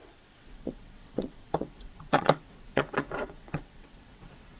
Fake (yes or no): yes